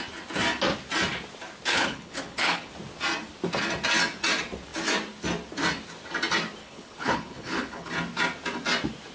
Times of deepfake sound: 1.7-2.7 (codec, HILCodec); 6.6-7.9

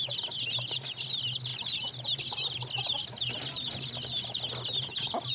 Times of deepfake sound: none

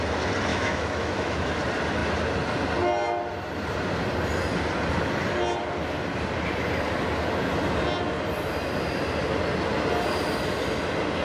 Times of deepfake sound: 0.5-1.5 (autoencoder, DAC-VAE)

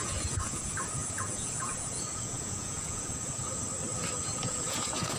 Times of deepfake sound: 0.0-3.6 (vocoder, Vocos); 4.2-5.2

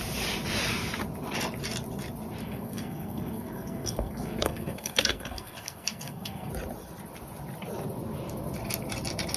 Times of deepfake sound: 2.4-6.5 (codec, SNAC)

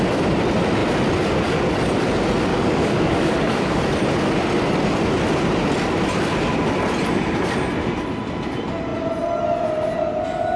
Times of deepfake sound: 2.5-3.8 (codec, DAC)

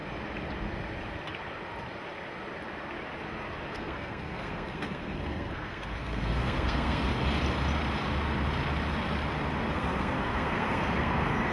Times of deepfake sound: 3.7-7.1 (codec, SNAC); 9.7-11.5